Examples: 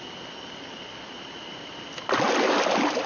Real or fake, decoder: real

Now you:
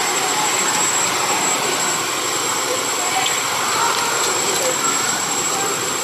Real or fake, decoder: fake, vocoder, BigVGAN v2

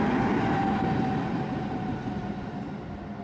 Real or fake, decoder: real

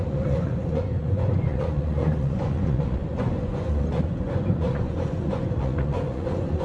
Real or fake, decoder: fake, vocoder, Vocos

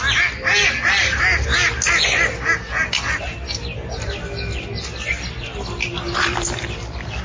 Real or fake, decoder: real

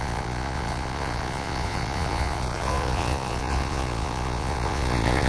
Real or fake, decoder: fake, vocoder, Vocos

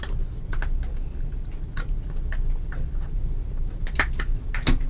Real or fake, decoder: real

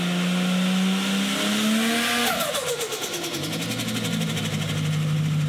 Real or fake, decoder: real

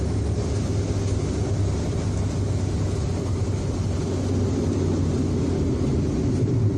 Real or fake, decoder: real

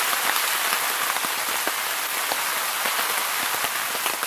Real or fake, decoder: real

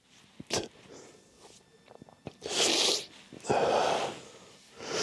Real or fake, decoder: real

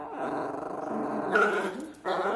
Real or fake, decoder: real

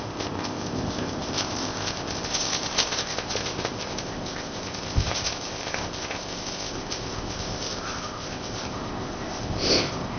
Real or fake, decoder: fake, codec, ZipCodec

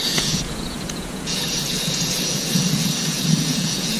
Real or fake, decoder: fake, vocoder, Vocos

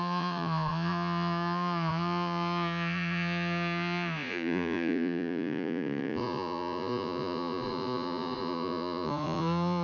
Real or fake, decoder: fake, vocoder, Vocos